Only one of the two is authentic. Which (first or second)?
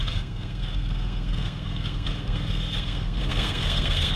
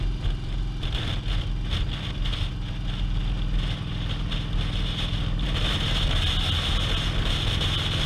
second